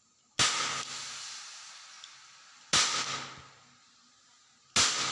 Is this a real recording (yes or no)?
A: yes